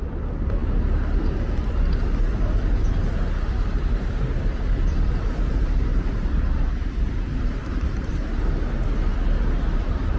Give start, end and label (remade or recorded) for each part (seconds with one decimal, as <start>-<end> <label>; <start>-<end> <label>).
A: 0.0-2.8 recorded; 2.8-5.5 remade; 5.5-5.9 recorded; 5.9-8.2 remade; 8.2-9.1 recorded; 9.1-10.2 remade